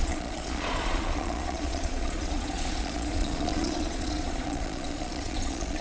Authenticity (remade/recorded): remade